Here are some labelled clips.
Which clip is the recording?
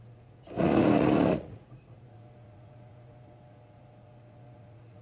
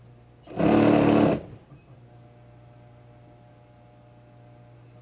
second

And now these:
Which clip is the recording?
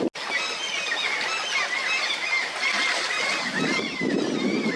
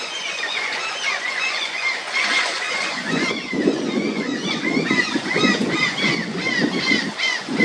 first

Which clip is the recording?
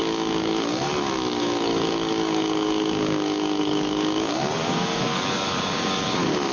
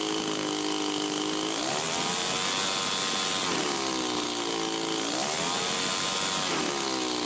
second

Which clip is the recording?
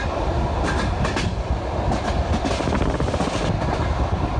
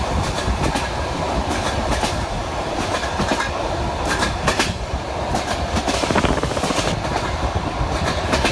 first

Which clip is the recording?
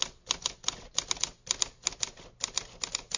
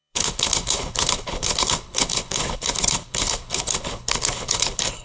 first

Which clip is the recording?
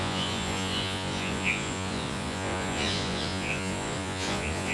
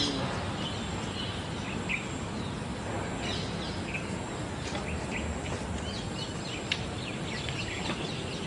second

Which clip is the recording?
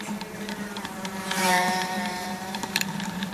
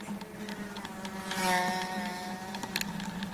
second